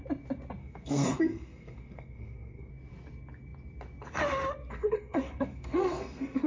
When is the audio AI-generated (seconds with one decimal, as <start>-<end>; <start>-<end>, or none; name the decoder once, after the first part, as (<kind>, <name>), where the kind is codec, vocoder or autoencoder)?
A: 0.6-2.7 (codec, SNAC); 4.6-6.5